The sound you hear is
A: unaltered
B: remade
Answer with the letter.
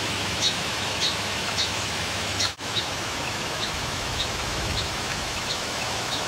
B